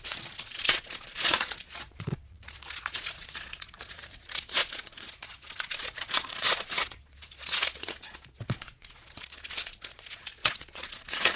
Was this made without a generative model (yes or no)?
no